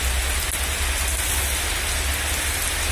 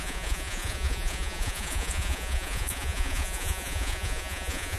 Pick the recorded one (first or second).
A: first